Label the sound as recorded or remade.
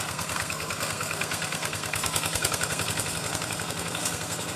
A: remade